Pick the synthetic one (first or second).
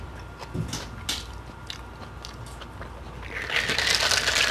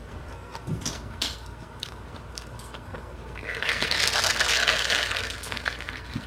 second